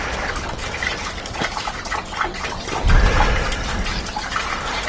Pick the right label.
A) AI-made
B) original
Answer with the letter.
B